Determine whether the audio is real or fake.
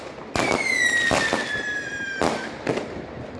real